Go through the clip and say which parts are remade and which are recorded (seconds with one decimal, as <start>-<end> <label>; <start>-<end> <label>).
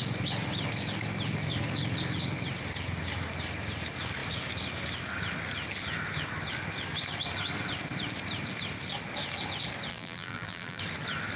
0.0-9.9 recorded; 9.9-10.8 remade; 10.8-11.4 recorded